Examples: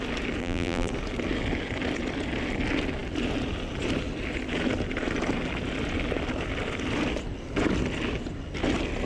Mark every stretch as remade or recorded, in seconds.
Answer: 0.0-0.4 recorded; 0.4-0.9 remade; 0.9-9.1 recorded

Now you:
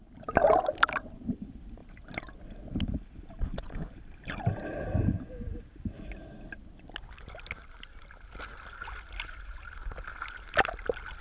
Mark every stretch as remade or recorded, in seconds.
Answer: 0.0-11.2 recorded

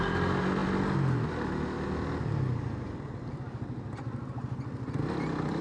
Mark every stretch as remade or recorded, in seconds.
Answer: 0.0-5.6 recorded

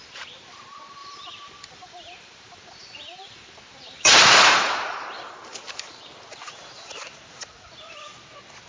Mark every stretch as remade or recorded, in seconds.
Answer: 0.0-1.0 recorded; 1.0-6.0 remade; 6.0-8.7 recorded